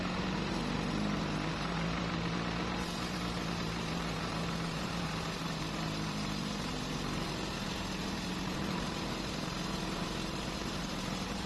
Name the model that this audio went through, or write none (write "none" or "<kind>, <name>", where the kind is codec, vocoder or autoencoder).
vocoder, BigVGAN v2